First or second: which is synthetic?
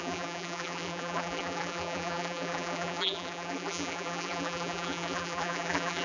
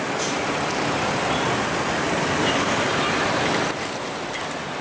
first